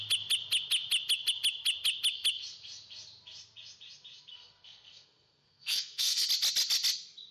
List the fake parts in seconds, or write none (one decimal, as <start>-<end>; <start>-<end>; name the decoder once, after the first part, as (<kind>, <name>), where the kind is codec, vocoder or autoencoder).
4.3-6.3 (codec, SNAC)